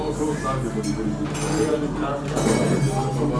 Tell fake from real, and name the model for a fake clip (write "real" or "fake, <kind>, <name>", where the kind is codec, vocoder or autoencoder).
real